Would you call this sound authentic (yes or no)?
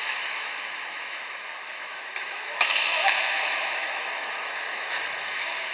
no